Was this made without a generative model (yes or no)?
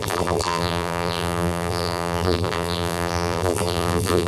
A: no